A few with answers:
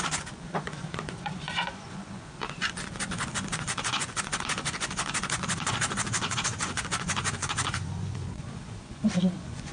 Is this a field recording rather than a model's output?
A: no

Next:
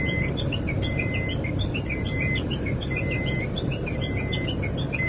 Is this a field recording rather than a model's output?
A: yes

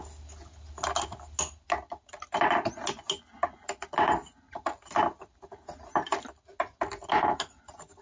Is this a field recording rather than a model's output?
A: yes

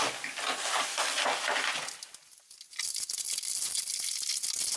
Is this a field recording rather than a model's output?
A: yes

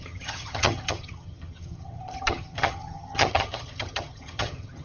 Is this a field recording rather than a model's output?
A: no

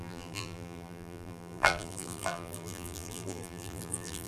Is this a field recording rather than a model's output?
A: no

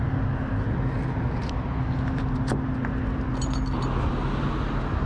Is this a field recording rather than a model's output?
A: yes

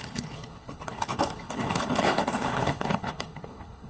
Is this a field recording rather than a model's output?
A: no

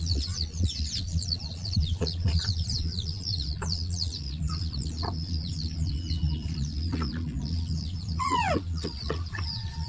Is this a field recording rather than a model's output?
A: no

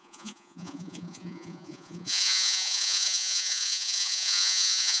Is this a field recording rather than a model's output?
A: no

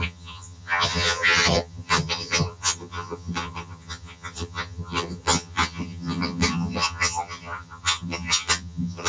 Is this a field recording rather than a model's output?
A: no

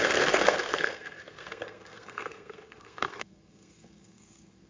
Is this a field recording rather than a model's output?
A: no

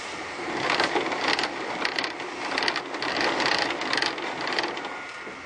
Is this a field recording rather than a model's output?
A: yes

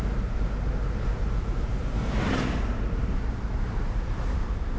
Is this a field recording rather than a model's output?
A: yes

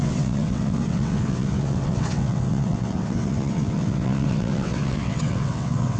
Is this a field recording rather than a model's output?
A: no